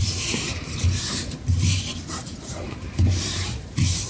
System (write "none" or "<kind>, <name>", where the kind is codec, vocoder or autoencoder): vocoder, BigVGAN v2